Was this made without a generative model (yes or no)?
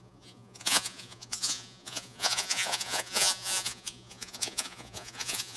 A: no